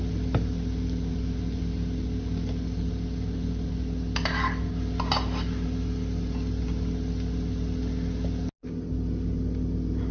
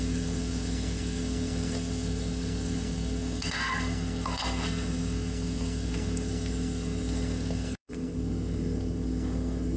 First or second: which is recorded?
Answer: first